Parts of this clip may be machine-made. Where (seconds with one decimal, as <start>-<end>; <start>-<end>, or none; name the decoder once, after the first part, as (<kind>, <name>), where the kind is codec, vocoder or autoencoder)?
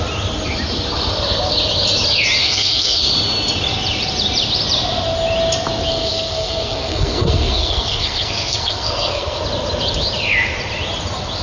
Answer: 2.4-3.1 (codec, SNAC); 5.9-9.4